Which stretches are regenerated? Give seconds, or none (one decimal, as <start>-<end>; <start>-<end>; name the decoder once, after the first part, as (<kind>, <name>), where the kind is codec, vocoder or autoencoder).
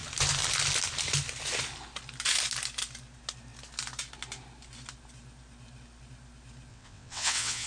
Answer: 6.7-7.7 (vocoder, WaveNeXt)